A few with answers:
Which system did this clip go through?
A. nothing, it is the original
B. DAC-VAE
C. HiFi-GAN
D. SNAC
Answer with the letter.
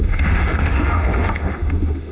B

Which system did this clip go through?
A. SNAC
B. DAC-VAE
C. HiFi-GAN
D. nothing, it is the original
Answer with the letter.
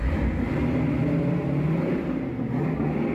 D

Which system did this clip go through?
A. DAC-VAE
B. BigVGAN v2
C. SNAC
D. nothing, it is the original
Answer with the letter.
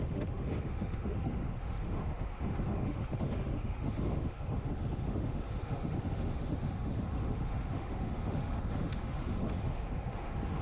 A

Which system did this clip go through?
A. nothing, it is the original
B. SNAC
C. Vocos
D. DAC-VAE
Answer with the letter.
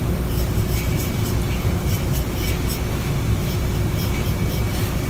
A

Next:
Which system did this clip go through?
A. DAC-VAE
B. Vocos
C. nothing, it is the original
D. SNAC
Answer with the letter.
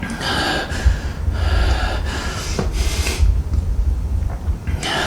C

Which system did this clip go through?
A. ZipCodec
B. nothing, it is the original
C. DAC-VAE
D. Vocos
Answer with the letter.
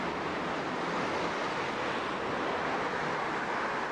B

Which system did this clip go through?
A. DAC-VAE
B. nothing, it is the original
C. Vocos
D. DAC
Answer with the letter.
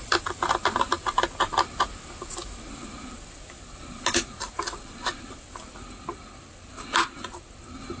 B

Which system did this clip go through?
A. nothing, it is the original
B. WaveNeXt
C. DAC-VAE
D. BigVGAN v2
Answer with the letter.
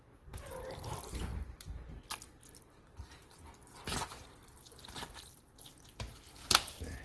A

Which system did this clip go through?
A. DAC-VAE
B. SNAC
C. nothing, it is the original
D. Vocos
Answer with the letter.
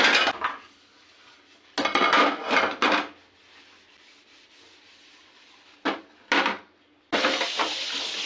C